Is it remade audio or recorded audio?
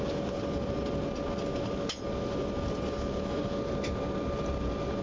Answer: recorded